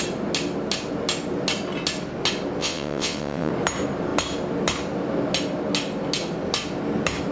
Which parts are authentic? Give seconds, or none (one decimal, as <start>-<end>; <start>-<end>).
0.0-2.6; 3.5-7.3